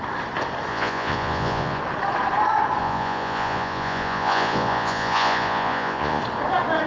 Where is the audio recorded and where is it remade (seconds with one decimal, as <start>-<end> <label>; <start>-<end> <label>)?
0.0-0.7 recorded; 0.7-1.8 remade; 1.8-2.8 recorded; 2.8-6.2 remade; 6.2-6.9 recorded